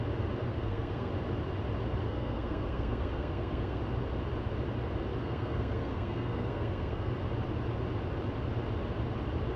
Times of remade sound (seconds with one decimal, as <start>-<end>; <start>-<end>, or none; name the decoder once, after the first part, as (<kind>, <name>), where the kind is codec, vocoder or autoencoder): 0.4-1.1 (codec, SNAC); 2.0-3.8; 5.2-7.1